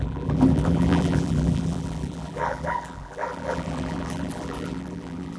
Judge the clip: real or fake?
fake